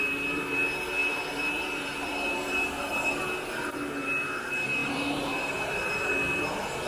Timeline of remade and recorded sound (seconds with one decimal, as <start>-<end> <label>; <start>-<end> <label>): 0.0-1.0 recorded; 1.0-3.2 remade; 3.2-4.8 recorded; 4.8-6.1 remade; 6.1-6.9 recorded